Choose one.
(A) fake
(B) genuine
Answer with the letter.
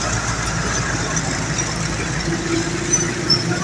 B